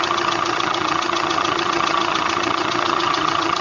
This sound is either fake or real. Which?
fake